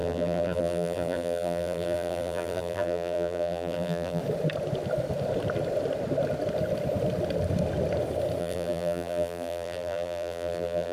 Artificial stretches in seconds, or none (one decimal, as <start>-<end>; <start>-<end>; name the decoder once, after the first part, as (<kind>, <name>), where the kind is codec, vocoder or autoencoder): 0.0-4.2 (vocoder, BigVGAN v2); 8.4-10.9